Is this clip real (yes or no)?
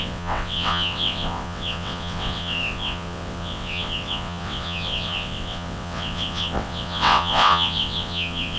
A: no